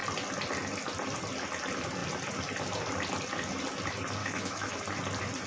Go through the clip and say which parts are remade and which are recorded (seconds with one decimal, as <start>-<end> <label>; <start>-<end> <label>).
0.0-4.2 recorded; 4.2-4.8 remade; 4.8-5.5 recorded